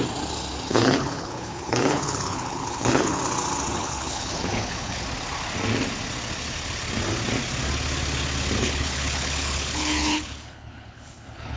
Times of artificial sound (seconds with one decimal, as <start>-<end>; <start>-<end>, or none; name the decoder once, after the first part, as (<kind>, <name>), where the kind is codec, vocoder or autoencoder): 0.7-3.2 (codec, HILCodec); 3.8-5.0; 8.6-11.6